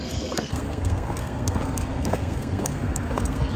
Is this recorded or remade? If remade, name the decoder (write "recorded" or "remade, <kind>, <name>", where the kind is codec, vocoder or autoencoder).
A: remade, codec, SNAC